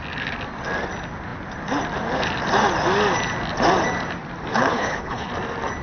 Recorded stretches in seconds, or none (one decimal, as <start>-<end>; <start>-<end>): 0.0-4.5; 5.3-5.8